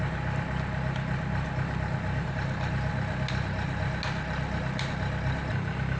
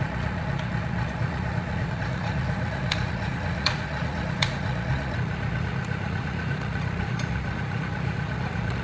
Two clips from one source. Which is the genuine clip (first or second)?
first